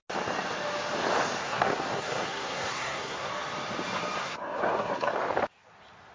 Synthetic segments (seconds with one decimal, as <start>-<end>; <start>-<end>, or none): 1.4-3.3; 4.2-5.2